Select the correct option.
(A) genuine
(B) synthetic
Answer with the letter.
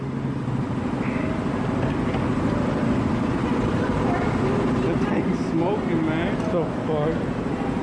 A